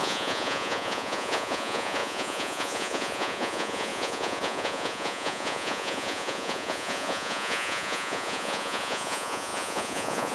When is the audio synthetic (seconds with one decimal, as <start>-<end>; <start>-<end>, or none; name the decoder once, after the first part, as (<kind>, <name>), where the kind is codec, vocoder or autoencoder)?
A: 0.0-10.3 (vocoder, Vocos)